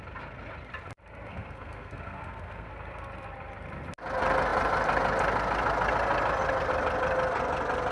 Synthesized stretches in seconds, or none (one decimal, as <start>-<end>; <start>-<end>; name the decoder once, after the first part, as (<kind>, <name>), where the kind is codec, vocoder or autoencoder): 1.3-2.7 (codec, SNAC)